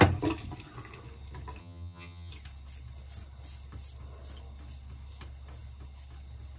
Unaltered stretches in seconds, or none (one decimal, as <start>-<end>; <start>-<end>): 0.0-1.6; 2.3-6.6